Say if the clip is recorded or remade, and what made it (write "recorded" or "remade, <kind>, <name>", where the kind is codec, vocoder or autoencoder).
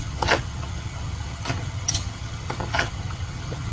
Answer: remade, vocoder, HiFi-GAN